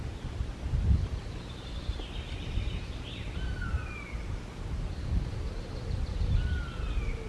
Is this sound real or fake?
real